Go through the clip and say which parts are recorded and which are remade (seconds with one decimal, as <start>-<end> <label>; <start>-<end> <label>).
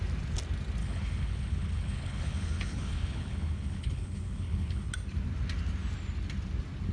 0.0-0.8 recorded; 0.8-4.9 remade; 4.9-6.9 recorded